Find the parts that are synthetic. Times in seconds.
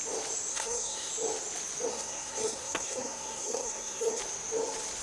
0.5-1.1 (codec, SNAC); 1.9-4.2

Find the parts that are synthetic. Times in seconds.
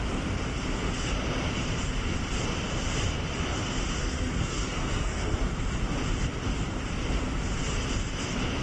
4.0-5.4 (codec, SNAC)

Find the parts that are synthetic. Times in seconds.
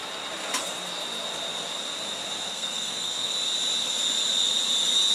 2.5-3.3 (codec, SNAC)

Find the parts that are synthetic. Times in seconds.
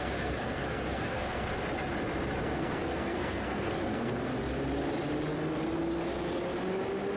0.0-1.5 (codec, SNAC); 2.4-4.3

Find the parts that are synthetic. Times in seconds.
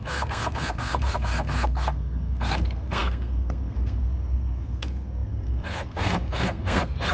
0.0-7.1 (codec, SNAC)